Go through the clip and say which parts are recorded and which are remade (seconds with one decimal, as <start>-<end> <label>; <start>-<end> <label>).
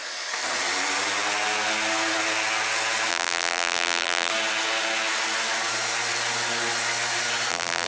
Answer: 0.0-3.1 recorded; 3.1-4.3 remade; 4.3-7.5 recorded; 7.5-7.9 remade